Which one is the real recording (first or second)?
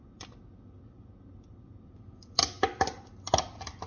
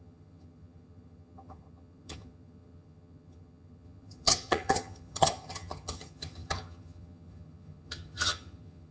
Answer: first